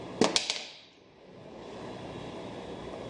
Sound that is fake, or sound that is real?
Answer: real